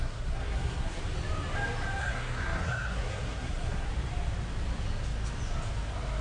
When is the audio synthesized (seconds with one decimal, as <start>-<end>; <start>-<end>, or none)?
0.0-1.0; 2.0-3.9